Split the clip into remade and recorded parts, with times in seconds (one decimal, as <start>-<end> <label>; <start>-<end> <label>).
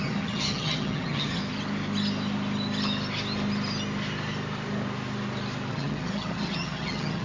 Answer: 0.0-1.4 remade; 1.4-5.7 recorded; 5.7-7.2 remade